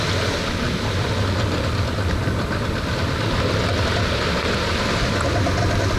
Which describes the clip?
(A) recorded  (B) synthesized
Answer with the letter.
A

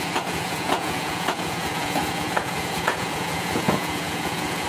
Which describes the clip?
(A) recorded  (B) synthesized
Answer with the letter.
B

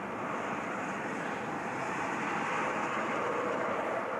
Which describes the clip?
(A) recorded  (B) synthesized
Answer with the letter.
B